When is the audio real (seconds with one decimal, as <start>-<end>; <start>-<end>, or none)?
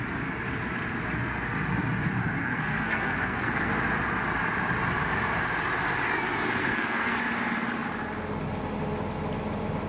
0.0-2.4; 3.7-6.6; 7.2-9.9